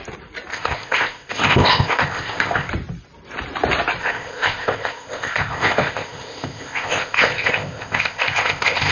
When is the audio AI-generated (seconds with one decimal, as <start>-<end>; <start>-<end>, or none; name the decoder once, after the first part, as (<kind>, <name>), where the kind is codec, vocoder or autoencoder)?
0.5-2.7 (codec, ZipCodec); 4.0-8.9